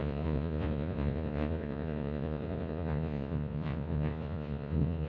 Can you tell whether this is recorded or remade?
remade